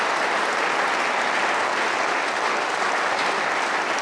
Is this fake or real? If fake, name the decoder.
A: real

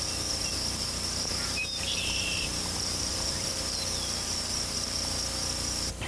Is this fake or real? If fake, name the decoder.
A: fake, vocoder, BigVGAN v2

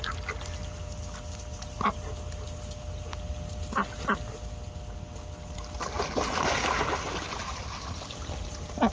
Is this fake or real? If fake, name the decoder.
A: real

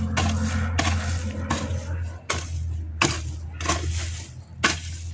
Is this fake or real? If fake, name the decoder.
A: real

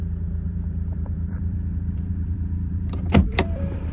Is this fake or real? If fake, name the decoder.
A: fake, vocoder, BigVGAN v2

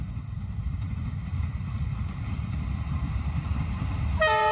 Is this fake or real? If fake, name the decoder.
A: fake, vocoder, BigVGAN v2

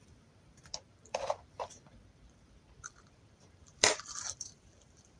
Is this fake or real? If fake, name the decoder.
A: fake, vocoder, BigVGAN v2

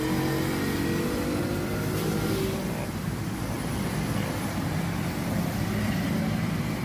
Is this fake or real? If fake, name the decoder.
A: real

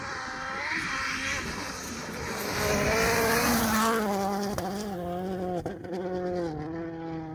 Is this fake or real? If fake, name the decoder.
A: real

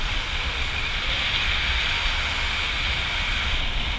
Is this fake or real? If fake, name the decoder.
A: real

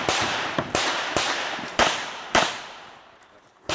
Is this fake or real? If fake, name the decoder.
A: fake, vocoder, BigVGAN v2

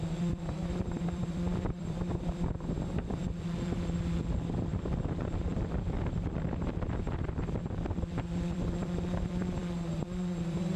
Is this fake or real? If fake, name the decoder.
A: fake, vocoder, BigVGAN v2